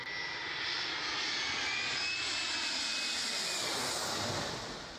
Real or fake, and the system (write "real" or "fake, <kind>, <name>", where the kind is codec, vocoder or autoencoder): real